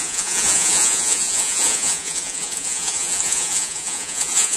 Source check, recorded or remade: remade